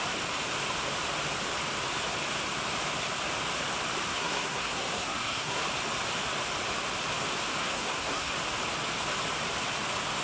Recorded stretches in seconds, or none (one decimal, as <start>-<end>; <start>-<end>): 0.0-4.1; 5.6-7.6; 8.3-10.2